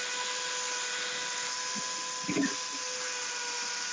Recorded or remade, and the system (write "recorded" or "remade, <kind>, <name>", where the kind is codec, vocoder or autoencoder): recorded